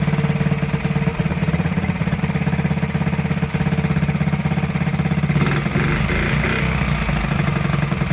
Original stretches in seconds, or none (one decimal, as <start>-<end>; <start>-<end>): 0.0-1.1; 2.2-8.1